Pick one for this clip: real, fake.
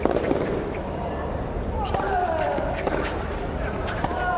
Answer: fake